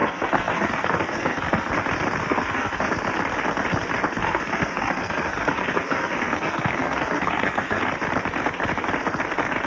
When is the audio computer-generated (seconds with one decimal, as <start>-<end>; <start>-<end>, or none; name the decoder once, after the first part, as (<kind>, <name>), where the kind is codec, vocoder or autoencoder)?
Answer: 0.0-1.7 (codec, SNAC); 2.2-2.9; 4.2-7.9